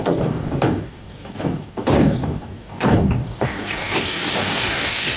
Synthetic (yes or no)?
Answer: yes